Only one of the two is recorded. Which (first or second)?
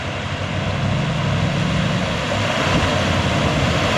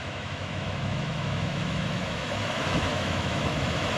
first